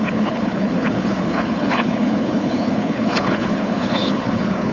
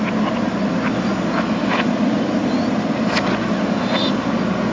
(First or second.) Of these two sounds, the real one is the second